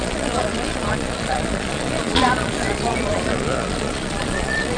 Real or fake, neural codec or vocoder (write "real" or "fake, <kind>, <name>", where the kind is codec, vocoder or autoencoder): fake, vocoder, Vocos